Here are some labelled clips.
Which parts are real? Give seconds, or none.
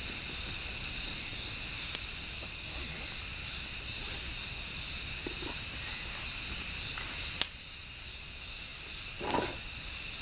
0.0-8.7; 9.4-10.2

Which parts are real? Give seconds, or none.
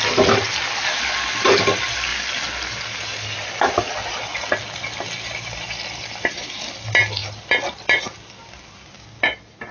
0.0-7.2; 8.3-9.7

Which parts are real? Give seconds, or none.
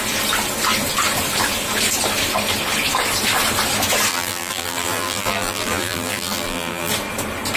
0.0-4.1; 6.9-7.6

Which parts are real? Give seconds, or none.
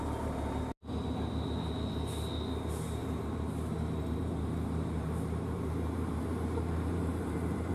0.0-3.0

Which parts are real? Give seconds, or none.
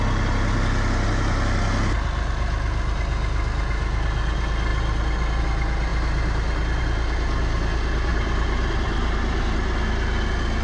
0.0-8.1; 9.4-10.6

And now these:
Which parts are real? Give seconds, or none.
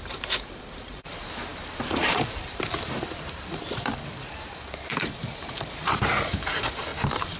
none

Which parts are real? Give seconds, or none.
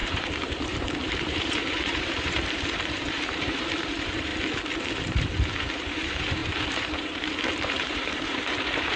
4.3-4.9